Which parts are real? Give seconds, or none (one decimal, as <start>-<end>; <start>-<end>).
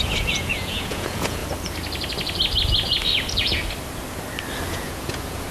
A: 1.4-4.7